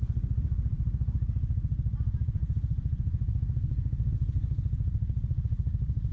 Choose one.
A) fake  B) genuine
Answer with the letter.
A